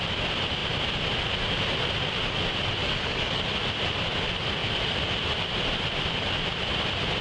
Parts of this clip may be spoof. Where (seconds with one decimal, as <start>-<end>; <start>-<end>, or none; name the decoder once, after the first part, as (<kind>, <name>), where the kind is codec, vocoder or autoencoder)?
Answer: 2.8-3.4 (codec, DAC)